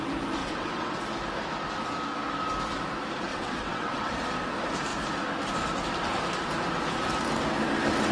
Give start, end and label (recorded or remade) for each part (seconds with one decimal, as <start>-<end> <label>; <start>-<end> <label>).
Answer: 0.0-0.4 recorded; 0.4-1.0 remade; 1.0-3.3 recorded; 3.3-4.1 remade; 4.1-8.1 recorded